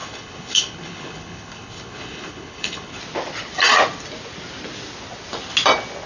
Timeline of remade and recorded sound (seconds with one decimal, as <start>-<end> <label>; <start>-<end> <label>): 0.0-3.0 remade; 3.0-6.1 recorded